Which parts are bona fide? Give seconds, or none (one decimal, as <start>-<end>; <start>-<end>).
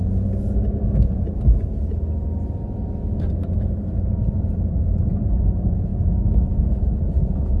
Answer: 0.0-5.9; 6.8-7.6